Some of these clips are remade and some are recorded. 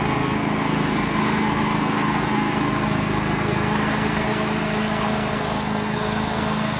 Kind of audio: remade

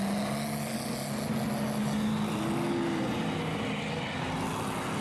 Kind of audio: recorded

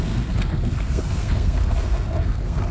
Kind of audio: remade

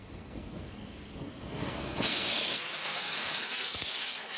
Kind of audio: remade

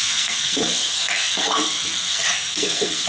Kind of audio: remade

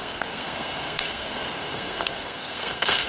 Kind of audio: remade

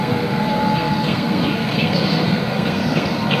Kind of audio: remade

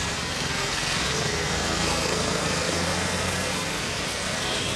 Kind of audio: remade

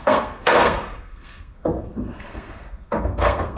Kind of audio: remade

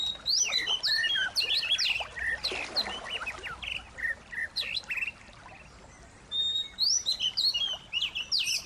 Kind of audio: recorded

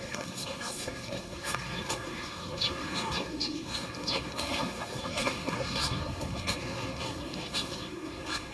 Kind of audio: remade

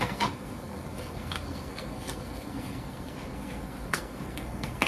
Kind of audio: remade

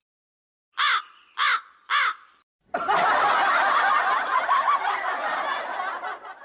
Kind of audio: recorded